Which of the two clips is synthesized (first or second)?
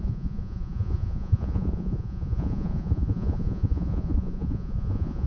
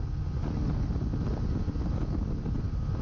first